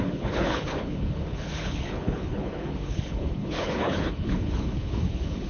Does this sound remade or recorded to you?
remade